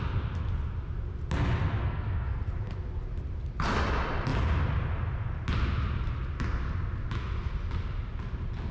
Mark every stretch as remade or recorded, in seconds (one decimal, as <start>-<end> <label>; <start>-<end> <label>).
0.0-1.8 recorded; 1.8-2.5 remade; 2.5-8.7 recorded